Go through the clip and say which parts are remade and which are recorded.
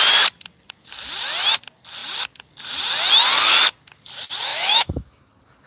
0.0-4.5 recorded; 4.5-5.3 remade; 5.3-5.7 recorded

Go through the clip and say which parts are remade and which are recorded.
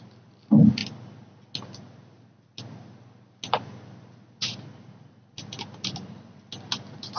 0.0-7.2 recorded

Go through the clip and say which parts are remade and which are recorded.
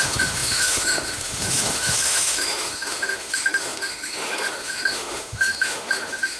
0.0-6.4 remade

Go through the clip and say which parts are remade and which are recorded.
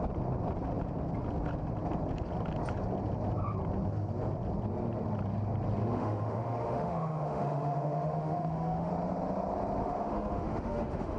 0.0-5.8 recorded; 5.8-8.9 remade; 8.9-9.8 recorded; 9.8-11.2 remade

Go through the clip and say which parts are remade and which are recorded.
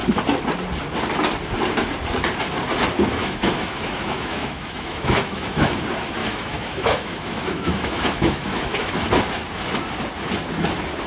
0.0-3.2 recorded; 3.2-5.8 remade; 5.8-6.2 recorded; 6.2-8.9 remade; 8.9-11.1 recorded